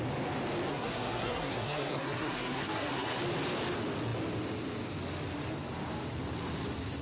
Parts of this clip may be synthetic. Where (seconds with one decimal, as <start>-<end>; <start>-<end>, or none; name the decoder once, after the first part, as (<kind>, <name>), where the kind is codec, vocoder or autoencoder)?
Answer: 0.7-3.2 (codec, SNAC)

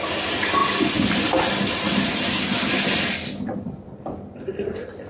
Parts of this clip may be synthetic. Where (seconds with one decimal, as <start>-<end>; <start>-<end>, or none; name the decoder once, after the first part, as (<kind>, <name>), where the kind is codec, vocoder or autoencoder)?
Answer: none

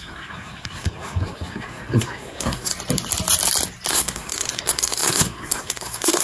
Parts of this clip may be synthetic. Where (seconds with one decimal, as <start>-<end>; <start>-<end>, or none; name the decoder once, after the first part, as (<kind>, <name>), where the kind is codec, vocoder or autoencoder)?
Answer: 0.0-2.7 (codec, SNAC); 3.9-6.2